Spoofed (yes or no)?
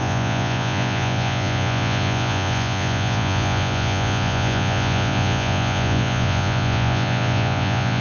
yes